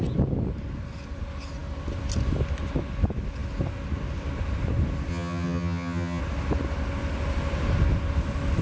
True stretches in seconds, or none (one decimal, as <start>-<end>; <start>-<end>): 0.0-5.1; 6.2-8.6